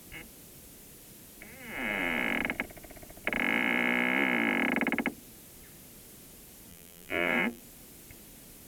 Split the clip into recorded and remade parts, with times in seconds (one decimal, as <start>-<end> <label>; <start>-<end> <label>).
0.0-6.7 recorded; 6.7-7.6 remade; 7.6-8.7 recorded